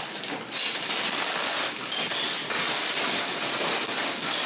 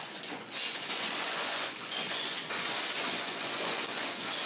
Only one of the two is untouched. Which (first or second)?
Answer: first